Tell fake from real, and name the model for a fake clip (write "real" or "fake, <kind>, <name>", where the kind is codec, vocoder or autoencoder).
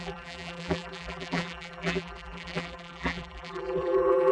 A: fake, vocoder, BigVGAN v2